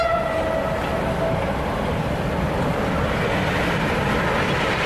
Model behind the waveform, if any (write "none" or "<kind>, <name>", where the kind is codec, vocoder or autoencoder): none